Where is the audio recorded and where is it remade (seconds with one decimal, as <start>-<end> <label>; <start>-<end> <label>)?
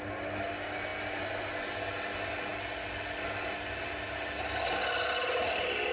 0.0-5.9 recorded